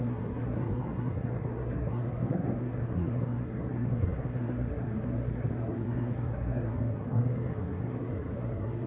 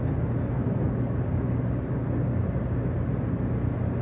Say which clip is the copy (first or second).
first